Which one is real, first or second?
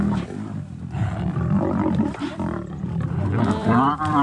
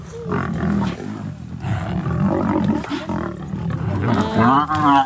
second